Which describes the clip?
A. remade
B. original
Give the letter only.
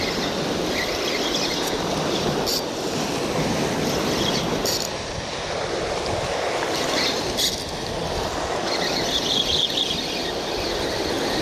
B